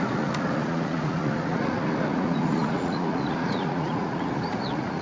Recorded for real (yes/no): no